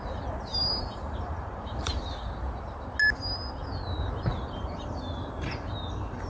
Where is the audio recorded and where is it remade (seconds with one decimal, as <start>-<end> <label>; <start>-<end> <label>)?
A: 0.0-0.5 recorded; 0.5-2.1 remade; 2.1-4.3 recorded; 4.3-6.3 remade